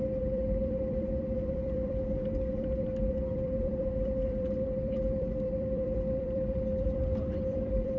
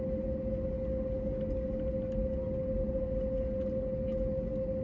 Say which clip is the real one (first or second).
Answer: second